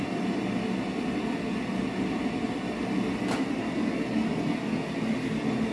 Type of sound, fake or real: real